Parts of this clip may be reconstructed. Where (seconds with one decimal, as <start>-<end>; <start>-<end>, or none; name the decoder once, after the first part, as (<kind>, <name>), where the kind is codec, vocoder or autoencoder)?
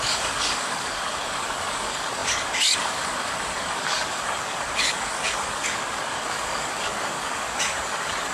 0.0-8.3 (codec, DAC)